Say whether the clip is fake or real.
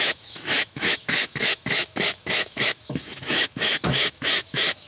fake